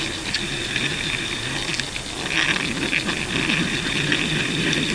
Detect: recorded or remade recorded